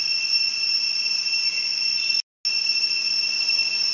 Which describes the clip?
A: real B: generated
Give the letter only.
A